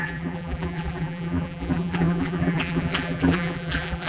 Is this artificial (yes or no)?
yes